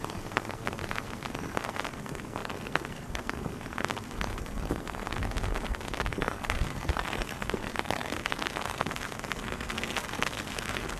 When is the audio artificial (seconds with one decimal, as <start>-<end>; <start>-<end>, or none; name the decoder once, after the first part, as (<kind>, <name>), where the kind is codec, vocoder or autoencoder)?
0.0-11.0 (codec, SNAC)